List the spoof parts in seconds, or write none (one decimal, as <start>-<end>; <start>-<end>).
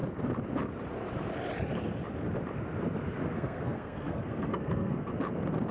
3.3-5.1